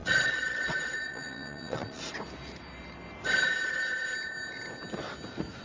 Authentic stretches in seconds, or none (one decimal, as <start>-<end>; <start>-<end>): 2.0-5.6